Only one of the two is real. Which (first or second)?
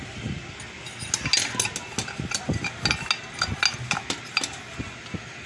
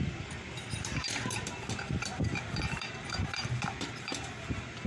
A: first